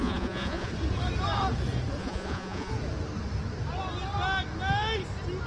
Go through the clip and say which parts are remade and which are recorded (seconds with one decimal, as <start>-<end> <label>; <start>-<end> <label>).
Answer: 0.0-0.7 remade; 0.7-2.0 recorded; 2.0-2.7 remade; 2.7-5.5 recorded